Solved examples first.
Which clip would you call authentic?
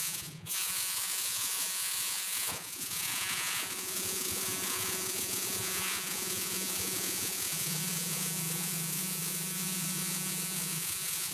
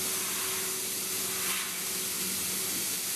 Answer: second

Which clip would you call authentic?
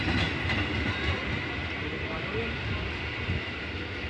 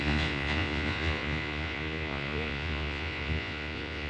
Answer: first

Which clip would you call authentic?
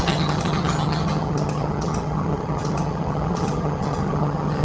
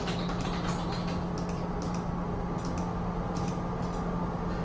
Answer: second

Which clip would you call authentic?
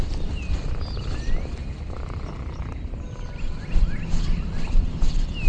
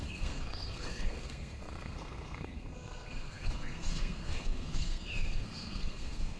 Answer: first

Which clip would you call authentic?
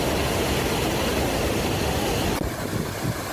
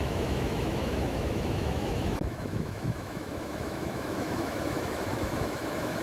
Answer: first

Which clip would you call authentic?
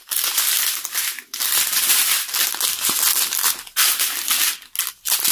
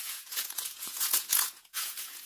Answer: first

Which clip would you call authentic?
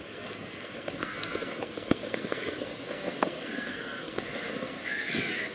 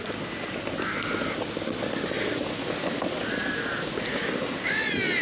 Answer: second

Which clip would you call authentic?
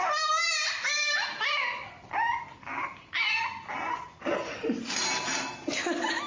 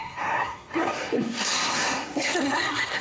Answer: first